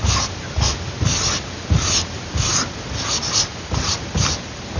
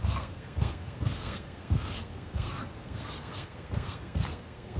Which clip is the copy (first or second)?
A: second